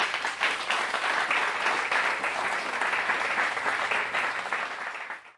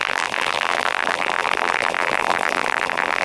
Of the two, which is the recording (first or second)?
first